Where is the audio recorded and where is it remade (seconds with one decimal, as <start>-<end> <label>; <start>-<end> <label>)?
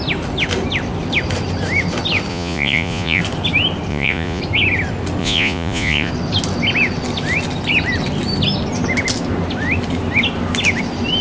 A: 0.0-2.3 recorded; 2.3-3.2 remade; 3.2-3.9 recorded; 3.9-4.4 remade; 4.4-5.2 recorded; 5.2-6.1 remade; 6.1-11.2 recorded